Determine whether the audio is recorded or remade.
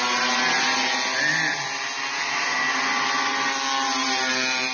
recorded